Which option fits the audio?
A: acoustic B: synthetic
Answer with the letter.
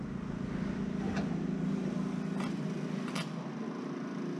A